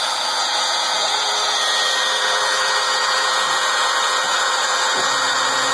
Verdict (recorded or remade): remade